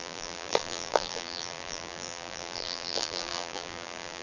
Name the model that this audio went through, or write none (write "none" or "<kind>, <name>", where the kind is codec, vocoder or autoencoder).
vocoder, BigVGAN v2